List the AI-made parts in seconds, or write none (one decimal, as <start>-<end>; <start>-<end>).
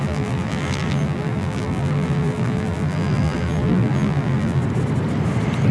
0.0-4.6